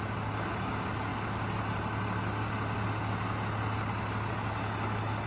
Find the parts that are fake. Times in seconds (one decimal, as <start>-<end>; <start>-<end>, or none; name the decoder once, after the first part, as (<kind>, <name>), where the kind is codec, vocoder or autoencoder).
none